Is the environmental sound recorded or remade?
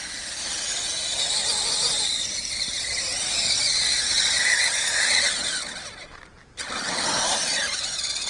recorded